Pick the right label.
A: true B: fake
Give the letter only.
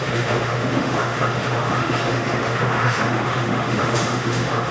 B